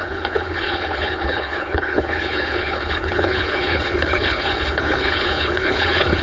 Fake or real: fake